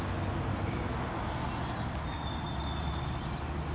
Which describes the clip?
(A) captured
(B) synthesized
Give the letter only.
A